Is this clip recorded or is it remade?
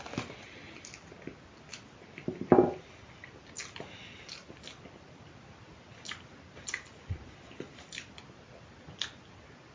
recorded